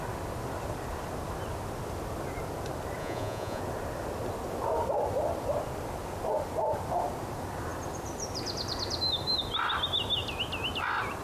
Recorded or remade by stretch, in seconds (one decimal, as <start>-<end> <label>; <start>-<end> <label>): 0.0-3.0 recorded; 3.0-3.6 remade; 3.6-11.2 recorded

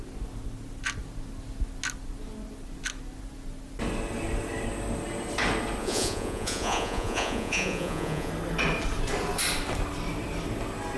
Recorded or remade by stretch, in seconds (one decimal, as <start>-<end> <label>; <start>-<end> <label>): 0.0-5.8 recorded; 5.8-8.3 remade; 8.3-11.0 recorded

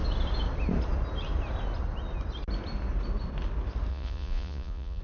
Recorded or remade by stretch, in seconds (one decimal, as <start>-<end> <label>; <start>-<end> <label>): 0.0-3.9 recorded; 3.9-5.0 remade

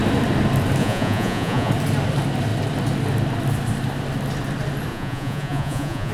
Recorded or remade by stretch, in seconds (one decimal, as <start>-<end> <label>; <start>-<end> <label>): 0.0-0.8 recorded; 0.8-1.7 remade; 1.7-4.9 recorded; 4.9-6.1 remade